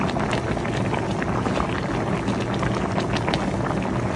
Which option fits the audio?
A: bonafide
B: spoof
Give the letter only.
A